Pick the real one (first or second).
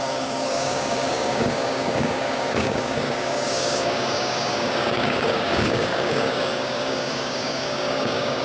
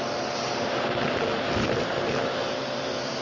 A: second